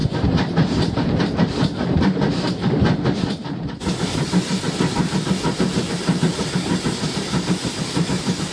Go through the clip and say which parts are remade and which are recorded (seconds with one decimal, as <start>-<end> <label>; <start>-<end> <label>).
0.0-1.2 remade; 1.2-8.5 recorded